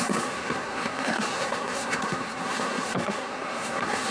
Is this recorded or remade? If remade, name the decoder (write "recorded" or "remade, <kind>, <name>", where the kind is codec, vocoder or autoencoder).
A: remade, codec, SNAC